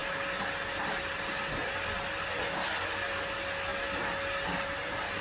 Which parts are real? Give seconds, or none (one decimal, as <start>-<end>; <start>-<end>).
0.0-5.2